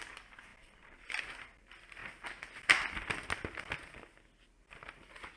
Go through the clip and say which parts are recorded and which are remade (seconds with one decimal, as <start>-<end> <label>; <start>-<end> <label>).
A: 0.0-0.5 recorded; 0.5-1.2 remade; 1.2-5.4 recorded